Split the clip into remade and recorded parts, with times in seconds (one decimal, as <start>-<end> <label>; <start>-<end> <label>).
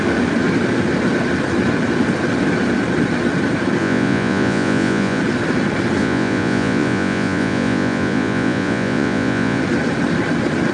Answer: 0.0-3.8 recorded; 3.8-5.2 remade; 5.2-6.0 recorded; 6.0-9.6 remade; 9.6-10.7 recorded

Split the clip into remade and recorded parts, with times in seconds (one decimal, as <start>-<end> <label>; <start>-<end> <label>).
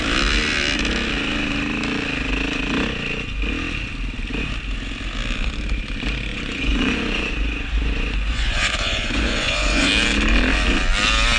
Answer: 0.0-6.3 recorded; 6.3-9.9 remade; 9.9-11.4 recorded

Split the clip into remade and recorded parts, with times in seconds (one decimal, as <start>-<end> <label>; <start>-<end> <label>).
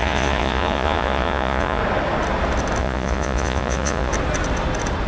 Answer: 0.0-1.8 remade; 1.8-2.8 recorded; 2.8-4.1 remade; 4.1-5.1 recorded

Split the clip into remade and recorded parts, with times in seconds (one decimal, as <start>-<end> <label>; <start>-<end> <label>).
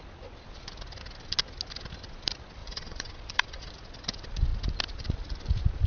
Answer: 0.0-2.6 recorded; 2.6-3.7 remade; 3.7-5.9 recorded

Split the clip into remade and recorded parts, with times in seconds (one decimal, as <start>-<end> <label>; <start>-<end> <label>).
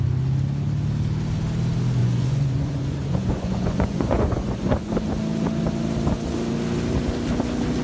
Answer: 0.0-2.0 recorded; 2.0-4.9 remade; 4.9-7.8 recorded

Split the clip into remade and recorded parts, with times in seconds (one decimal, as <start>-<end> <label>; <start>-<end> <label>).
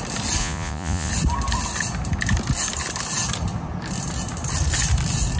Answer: 0.0-0.4 recorded; 0.4-1.1 remade; 1.1-5.4 recorded